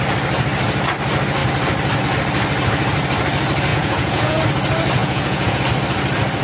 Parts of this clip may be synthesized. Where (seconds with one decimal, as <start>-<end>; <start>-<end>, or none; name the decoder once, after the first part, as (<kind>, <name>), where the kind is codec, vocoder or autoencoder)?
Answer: 3.7-4.4 (vocoder, Vocos); 5.0-5.6